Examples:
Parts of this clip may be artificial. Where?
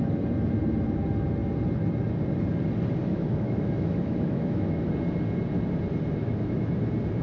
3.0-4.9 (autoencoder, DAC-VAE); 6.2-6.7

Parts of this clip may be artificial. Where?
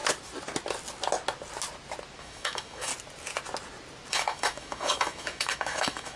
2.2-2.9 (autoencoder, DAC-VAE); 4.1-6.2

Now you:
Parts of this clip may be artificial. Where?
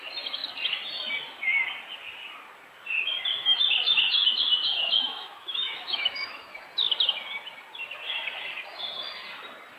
3.4-6.5 (autoencoder, DAC-VAE)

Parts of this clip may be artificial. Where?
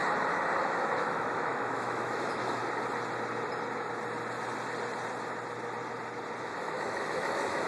0.6-2.6 (autoencoder, DAC-VAE); 6.4-7.7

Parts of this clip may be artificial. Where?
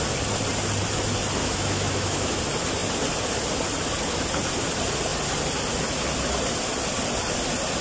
1.4-2.4 (autoencoder, DAC-VAE)